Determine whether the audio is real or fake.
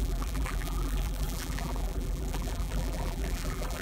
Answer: fake